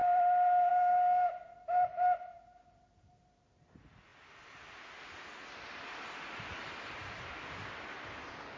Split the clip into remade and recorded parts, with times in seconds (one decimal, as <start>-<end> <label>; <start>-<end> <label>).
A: 0.0-0.7 remade; 0.7-8.6 recorded